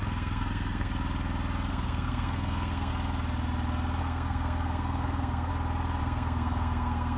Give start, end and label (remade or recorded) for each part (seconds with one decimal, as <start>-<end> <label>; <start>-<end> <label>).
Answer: 0.0-0.9 remade; 0.9-1.7 recorded; 1.7-2.9 remade; 2.9-4.0 recorded; 4.0-5.5 remade; 5.5-6.0 recorded; 6.0-7.2 remade